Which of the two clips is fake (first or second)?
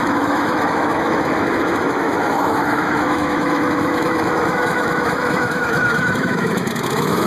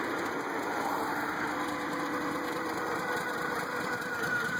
first